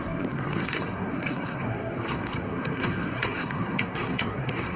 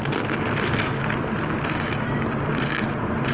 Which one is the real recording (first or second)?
second